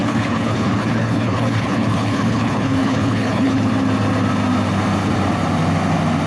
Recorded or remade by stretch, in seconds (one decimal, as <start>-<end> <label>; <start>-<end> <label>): 0.0-3.7 remade; 3.7-6.3 recorded